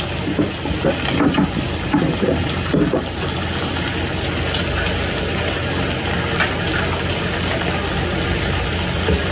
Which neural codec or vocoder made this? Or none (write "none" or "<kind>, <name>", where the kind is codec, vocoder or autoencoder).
none